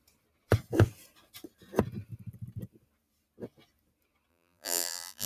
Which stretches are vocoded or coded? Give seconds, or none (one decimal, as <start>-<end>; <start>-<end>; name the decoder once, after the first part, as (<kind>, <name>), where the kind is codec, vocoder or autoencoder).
4.3-5.3 (vocoder, BigVGAN v2)